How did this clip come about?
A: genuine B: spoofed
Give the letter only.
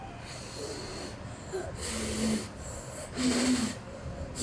A